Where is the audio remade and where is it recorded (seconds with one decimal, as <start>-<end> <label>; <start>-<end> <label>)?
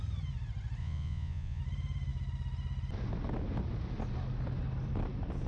0.0-0.8 recorded; 0.8-1.6 remade; 1.6-5.5 recorded